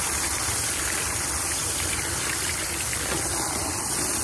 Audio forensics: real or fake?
real